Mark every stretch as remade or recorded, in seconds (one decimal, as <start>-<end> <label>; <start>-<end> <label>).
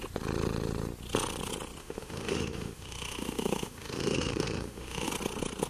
0.0-1.8 recorded; 1.8-5.1 remade; 5.1-5.7 recorded